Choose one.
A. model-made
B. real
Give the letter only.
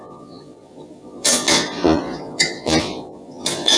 A